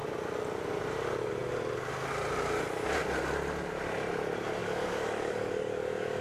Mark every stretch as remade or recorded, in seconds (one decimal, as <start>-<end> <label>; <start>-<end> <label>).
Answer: 0.0-4.6 recorded; 4.6-6.2 remade